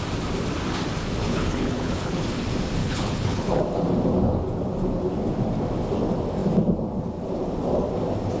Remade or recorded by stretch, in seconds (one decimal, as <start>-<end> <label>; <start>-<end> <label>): 0.0-1.2 recorded; 1.2-2.2 remade; 2.2-2.8 recorded; 2.8-3.6 remade; 3.6-8.4 recorded